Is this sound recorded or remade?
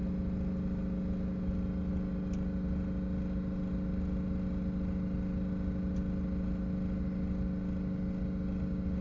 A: recorded